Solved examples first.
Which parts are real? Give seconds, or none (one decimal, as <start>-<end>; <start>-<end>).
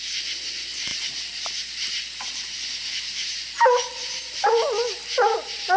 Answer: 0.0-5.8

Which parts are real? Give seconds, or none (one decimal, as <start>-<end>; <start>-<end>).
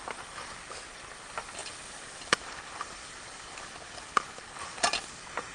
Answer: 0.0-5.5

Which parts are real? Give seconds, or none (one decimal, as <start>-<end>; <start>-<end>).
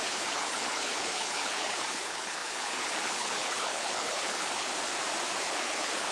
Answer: 4.7-5.4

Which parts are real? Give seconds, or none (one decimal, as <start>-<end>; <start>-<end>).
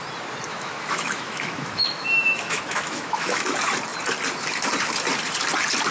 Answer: 0.0-0.5; 3.5-5.9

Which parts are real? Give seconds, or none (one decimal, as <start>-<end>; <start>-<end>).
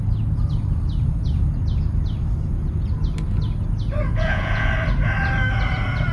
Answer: 0.0-4.1; 4.7-6.1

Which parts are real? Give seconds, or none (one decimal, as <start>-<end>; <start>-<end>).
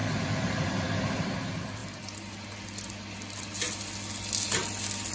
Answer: 0.0-5.1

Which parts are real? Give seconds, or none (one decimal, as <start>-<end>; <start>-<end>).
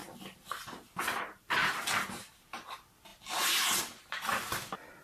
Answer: 0.0-5.0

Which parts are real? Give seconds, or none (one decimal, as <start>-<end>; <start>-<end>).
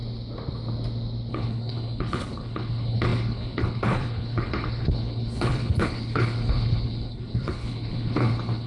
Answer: 0.0-1.3